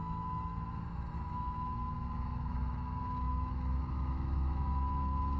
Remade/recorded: remade